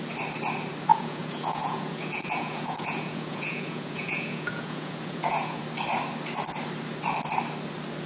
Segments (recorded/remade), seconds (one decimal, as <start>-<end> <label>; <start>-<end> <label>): 0.0-0.9 recorded; 0.9-5.6 remade; 5.6-8.1 recorded